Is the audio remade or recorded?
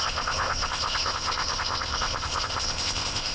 remade